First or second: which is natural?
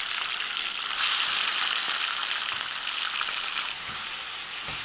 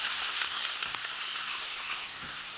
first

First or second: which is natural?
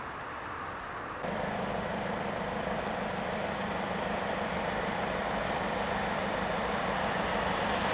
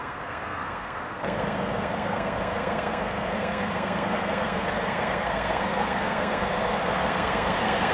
first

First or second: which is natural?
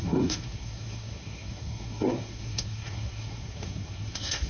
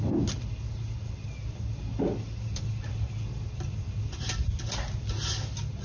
second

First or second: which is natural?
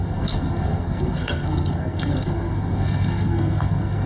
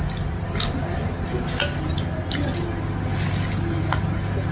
second